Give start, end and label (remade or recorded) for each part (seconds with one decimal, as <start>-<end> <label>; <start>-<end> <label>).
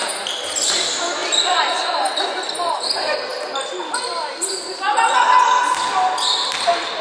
0.0-7.0 recorded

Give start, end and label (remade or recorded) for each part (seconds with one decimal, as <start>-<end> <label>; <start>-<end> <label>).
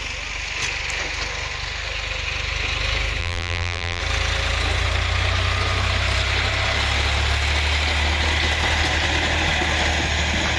0.0-3.2 recorded; 3.2-4.0 remade; 4.0-10.6 recorded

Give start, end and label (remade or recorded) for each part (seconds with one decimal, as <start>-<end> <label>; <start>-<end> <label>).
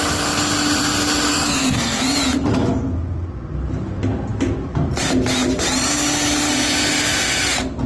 0.0-1.3 recorded; 1.3-2.0 remade; 2.0-7.9 recorded